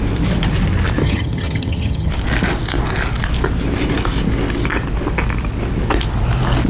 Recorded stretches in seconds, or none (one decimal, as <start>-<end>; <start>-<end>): 0.0-1.0; 2.1-6.7